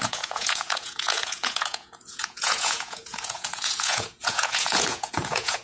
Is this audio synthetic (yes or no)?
yes